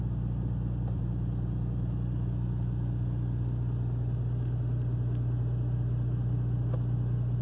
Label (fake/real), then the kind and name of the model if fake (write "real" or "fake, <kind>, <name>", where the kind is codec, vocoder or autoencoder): real